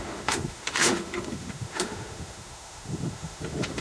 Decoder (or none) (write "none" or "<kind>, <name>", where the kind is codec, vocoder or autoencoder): autoencoder, DAC-VAE